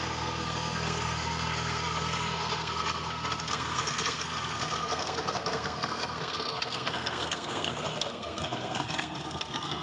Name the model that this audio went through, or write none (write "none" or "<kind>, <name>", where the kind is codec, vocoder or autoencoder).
codec, SNAC